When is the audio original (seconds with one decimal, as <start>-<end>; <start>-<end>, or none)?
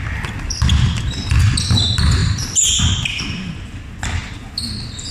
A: 0.0-2.2; 2.8-5.1